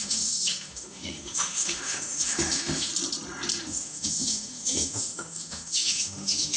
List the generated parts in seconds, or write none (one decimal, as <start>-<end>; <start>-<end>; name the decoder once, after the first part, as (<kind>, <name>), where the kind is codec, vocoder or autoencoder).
0.0-2.9 (autoencoder, DAC-VAE); 3.6-6.6